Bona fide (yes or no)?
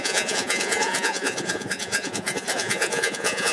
no